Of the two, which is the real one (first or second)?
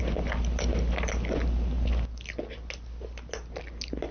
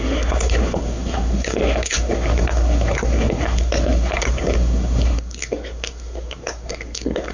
first